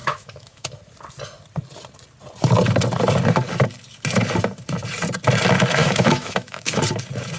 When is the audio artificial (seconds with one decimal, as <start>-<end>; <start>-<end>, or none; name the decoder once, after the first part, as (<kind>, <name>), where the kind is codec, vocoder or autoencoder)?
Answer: 0.0-0.7 (autoencoder, DAC-VAE); 5.8-6.8